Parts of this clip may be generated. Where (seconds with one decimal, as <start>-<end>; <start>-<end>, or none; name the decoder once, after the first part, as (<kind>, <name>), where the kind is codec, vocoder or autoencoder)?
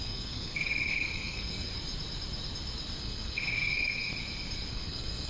0.0-1.7 (codec, SNAC); 3.0-4.1; 4.7-5.3